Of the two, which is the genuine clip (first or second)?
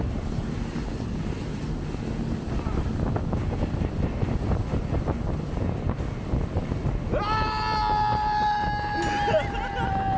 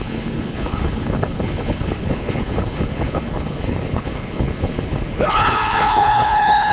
first